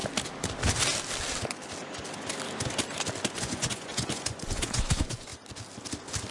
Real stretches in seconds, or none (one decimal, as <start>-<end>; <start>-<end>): 0.0-3.3; 5.3-6.3